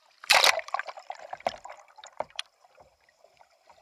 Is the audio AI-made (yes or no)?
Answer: yes